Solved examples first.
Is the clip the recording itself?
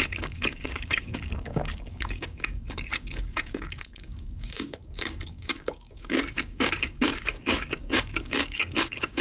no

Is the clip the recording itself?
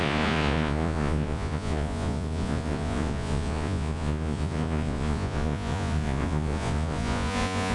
no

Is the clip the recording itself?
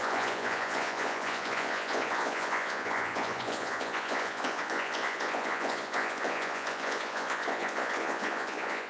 no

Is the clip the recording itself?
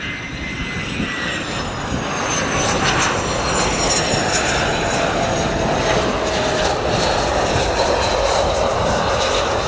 yes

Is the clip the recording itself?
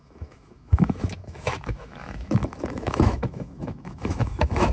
no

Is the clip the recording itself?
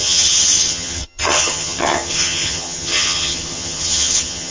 no